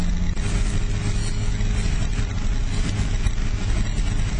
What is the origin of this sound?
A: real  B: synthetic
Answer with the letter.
A